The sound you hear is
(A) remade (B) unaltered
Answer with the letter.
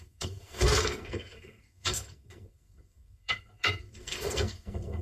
A